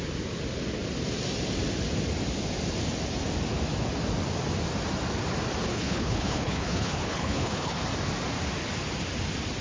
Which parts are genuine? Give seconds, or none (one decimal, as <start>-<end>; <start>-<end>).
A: 0.0-5.7; 7.8-9.6